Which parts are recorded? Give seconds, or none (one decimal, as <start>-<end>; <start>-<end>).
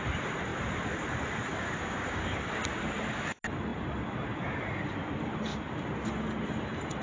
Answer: 0.0-1.5; 2.5-7.0